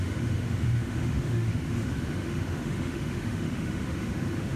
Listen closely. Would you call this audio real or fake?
fake